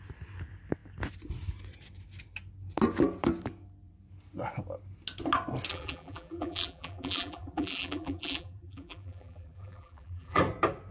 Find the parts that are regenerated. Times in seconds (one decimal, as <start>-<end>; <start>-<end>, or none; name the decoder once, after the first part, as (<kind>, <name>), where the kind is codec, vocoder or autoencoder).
5.7-10.4 (vocoder, BigVGAN v2)